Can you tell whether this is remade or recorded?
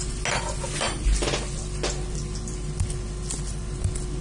recorded